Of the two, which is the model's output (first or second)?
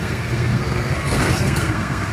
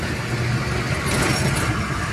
first